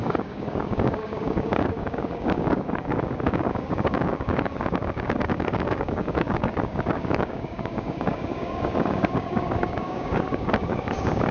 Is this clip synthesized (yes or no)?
yes